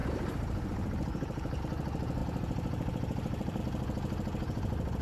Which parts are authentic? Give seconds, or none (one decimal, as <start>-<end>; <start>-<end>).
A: 1.6-2.2; 3.6-5.0

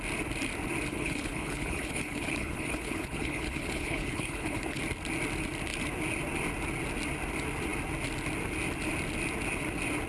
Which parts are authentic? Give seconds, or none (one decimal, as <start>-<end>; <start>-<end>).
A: 0.0-0.9; 4.8-10.1

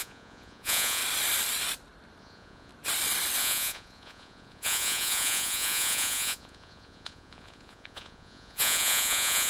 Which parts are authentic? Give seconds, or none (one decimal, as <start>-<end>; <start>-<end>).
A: 1.0-2.2; 2.7-3.4

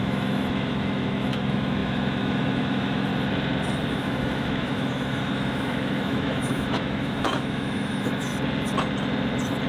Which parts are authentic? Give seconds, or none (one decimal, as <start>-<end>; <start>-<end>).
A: 3.1-3.9; 8.3-9.7

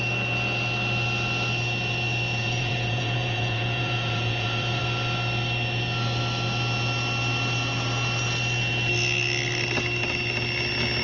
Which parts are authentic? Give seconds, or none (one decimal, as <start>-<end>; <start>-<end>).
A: 0.0-2.4; 4.8-11.0

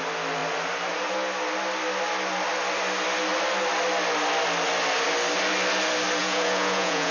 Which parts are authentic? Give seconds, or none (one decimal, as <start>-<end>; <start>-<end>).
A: 0.0-6.2

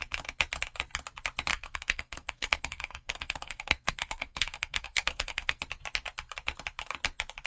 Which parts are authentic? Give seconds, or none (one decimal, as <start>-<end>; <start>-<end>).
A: 0.0-1.5; 5.6-7.5

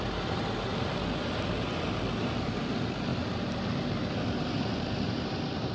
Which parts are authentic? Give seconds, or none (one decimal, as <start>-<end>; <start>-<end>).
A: 0.0-5.7